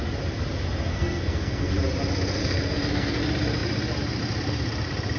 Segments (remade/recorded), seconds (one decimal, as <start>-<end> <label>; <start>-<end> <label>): 0.0-0.9 recorded; 0.9-1.7 remade; 1.7-2.4 recorded; 2.4-3.2 remade; 3.2-5.2 recorded